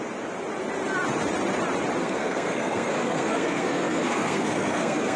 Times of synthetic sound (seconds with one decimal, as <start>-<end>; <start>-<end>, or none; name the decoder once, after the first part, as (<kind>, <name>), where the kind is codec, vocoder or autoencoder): 2.0-5.2 (codec, SNAC)

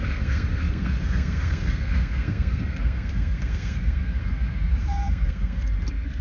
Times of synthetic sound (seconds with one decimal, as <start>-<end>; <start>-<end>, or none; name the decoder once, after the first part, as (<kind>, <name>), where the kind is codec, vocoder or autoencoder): 0.0-6.2 (codec, SNAC)

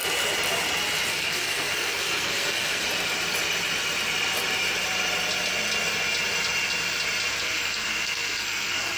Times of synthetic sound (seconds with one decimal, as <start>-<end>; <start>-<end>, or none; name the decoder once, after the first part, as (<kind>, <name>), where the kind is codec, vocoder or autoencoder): 1.1-2.8 (codec, SNAC); 7.3-9.0

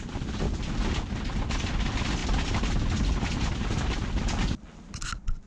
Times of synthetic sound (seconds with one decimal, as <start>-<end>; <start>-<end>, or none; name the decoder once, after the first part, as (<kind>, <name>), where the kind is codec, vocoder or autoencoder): none